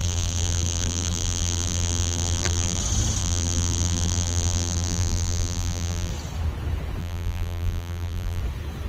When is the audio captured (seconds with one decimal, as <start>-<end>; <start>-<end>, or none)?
2.8-3.2; 6.1-7.0; 8.4-8.9